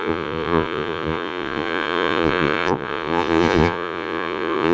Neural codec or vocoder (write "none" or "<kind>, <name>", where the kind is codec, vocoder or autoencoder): vocoder, Vocos